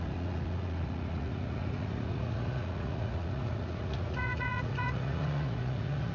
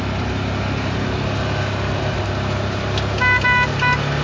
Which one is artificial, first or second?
first